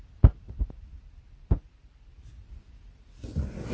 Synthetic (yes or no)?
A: no